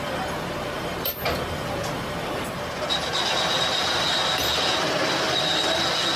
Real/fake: real